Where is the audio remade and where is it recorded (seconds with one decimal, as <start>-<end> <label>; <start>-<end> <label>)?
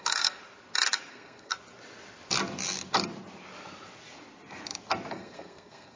0.0-0.4 remade; 0.4-1.1 recorded; 1.1-1.5 remade; 1.5-5.1 recorded; 5.1-6.0 remade